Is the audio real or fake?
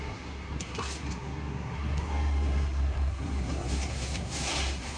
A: fake